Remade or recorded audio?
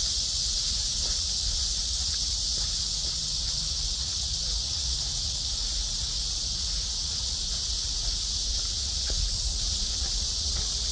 remade